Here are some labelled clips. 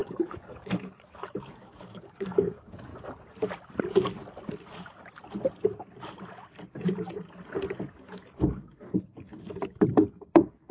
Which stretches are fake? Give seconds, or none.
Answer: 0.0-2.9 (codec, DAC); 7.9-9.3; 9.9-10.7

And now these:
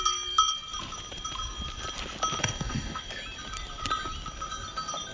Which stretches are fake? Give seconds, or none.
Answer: 2.4-3.1 (codec, DAC)

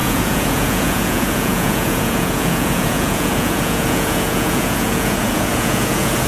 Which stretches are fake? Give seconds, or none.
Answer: 0.0-6.3 (vocoder, Vocos)

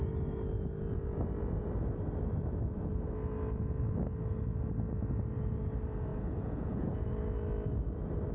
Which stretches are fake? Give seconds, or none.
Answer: 6.1-7.1 (vocoder, Vocos)

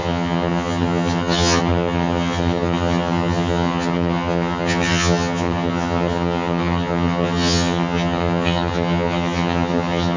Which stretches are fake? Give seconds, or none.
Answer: 0.0-10.2 (vocoder, HiFi-GAN)

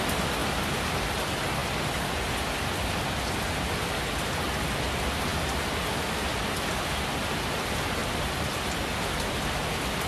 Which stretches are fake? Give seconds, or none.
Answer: 0.4-1.0 (vocoder, BigVGAN v2); 8.0-9.5

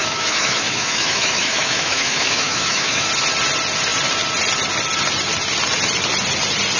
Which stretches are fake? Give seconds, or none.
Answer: 0.0-3.1 (autoencoder, DAC-VAE)